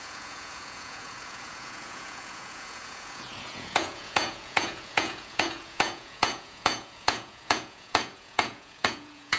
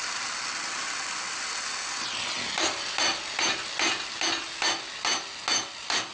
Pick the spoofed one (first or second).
first